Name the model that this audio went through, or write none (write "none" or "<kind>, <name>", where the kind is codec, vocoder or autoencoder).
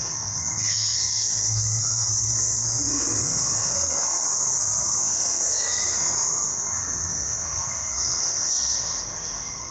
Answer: codec, SNAC